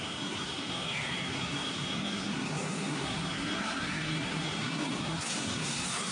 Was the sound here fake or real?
fake